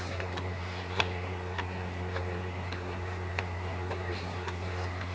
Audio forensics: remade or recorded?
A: remade